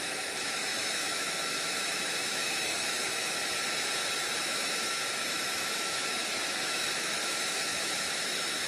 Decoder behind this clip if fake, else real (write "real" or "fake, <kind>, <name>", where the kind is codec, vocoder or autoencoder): fake, autoencoder, DAC-VAE